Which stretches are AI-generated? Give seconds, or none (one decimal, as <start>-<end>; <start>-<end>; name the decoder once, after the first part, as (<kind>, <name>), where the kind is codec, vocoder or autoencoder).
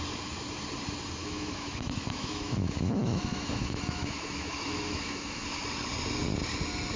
1.2-5.4 (autoencoder, DAC-VAE)